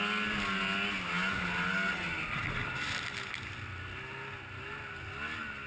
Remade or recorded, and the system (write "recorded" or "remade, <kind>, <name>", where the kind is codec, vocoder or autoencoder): recorded